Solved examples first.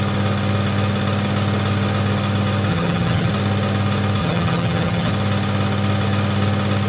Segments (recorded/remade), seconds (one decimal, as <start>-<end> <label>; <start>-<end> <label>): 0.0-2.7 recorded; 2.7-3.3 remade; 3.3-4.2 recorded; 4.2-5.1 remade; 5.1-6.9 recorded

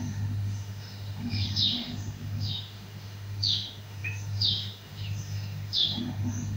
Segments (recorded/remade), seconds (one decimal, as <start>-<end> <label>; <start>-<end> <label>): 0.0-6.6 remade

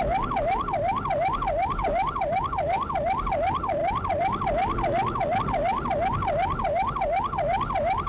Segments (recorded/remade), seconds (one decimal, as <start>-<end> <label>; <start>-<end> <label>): 0.0-3.8 recorded; 3.8-5.4 remade; 5.4-8.1 recorded